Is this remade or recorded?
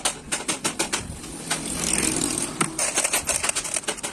recorded